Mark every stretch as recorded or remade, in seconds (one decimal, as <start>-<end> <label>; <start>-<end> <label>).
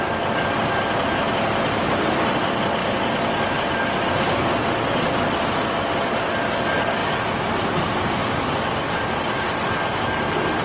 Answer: 0.0-1.2 recorded; 1.2-1.9 remade; 1.9-8.2 recorded; 8.2-9.2 remade; 9.2-10.6 recorded